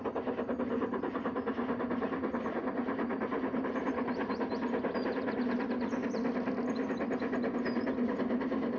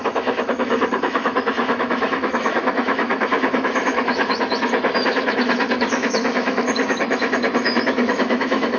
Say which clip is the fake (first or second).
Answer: second